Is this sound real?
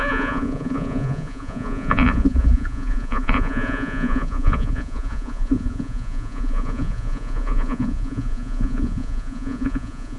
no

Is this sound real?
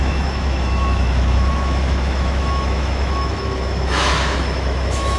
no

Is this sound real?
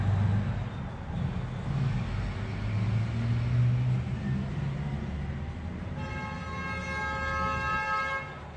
yes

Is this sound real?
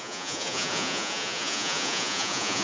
no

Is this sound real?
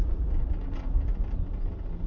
yes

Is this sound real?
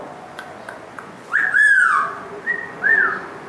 no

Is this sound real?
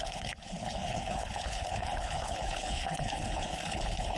no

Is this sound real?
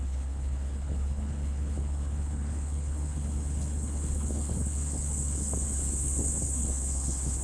no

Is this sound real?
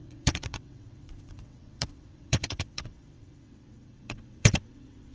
no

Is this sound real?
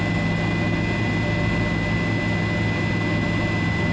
yes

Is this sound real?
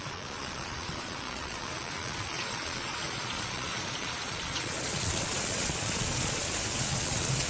no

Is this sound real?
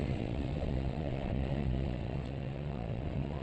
no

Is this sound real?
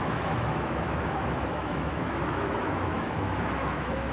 no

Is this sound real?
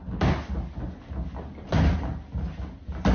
yes